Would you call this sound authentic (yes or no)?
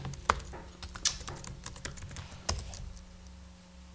yes